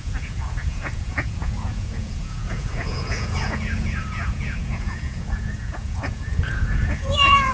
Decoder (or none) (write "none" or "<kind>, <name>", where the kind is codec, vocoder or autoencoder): vocoder, Vocos